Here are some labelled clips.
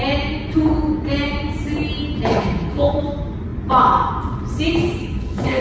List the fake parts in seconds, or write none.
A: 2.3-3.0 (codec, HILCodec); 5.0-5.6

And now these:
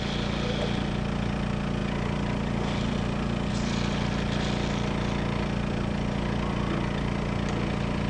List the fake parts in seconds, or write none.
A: none

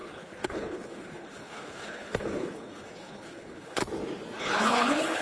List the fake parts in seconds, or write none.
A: 0.0-3.8 (codec, HILCodec); 4.4-5.2

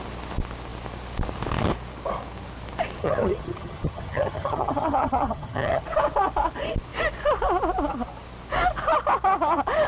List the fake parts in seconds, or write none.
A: 3.0-5.8 (vocoder, HiFi-GAN)

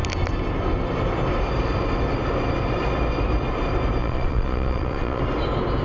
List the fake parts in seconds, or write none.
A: 4.0-5.2 (vocoder, Vocos)

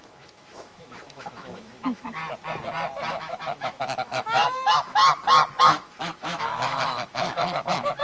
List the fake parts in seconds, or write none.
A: 0.0-2.2 (autoencoder, DAC-VAE); 3.1-5.0; 5.6-8.0